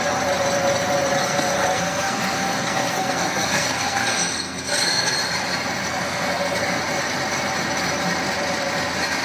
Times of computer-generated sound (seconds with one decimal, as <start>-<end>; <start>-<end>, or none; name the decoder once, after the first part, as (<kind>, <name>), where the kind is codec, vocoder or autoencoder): 1.2-5.1 (codec, SNAC); 5.9-6.8

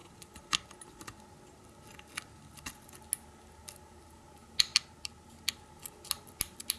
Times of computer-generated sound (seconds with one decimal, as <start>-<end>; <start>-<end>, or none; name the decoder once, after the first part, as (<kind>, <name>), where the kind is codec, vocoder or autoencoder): none

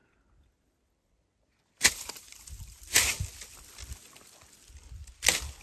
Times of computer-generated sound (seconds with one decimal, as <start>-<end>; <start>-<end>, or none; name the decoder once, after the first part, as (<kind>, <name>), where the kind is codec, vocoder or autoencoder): 0.0-2.9 (vocoder, BigVGAN v2)

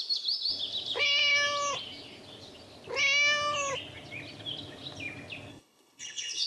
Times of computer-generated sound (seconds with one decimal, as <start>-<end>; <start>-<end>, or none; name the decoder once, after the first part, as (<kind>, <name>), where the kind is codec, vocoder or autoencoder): 5.5-6.5 (codec, HILCodec)

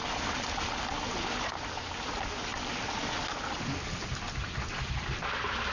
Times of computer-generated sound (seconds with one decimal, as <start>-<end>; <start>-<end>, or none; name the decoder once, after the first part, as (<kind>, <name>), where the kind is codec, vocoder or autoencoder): none